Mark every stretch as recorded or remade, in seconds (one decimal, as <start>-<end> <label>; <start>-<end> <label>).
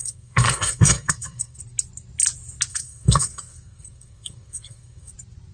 0.0-1.6 remade; 1.6-2.7 recorded; 2.7-5.1 remade; 5.1-5.5 recorded